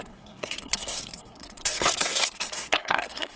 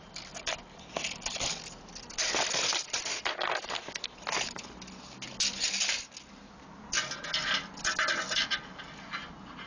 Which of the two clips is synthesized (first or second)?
first